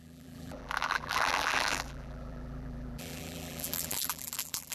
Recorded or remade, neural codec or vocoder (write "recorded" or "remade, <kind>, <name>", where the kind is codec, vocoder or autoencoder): remade, vocoder, BigVGAN v2